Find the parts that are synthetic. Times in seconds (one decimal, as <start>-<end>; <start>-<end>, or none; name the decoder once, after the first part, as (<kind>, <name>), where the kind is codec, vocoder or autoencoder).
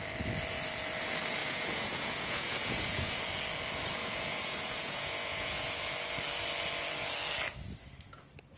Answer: 1.4-3.2 (vocoder, Vocos); 4.0-5.9